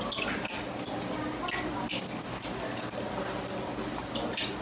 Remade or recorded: recorded